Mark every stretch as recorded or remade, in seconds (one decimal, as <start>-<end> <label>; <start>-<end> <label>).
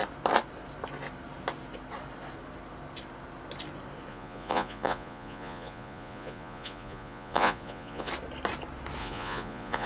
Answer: 0.0-4.1 recorded; 4.1-8.1 remade; 8.1-9.0 recorded; 9.0-9.9 remade